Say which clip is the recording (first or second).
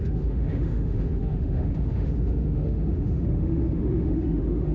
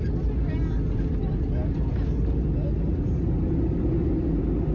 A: second